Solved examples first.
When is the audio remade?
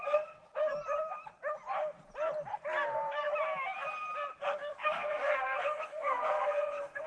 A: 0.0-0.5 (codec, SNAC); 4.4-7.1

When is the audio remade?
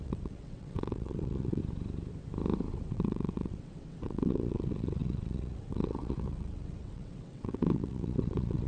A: 0.0-1.6 (vocoder, WaveNeXt); 2.7-8.7